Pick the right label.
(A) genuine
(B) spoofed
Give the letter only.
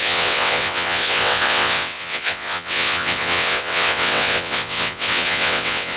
B